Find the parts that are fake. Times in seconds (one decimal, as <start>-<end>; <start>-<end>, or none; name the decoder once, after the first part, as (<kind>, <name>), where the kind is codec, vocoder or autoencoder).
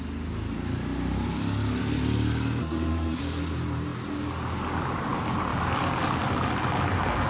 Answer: 2.6-3.2 (codec, SNAC)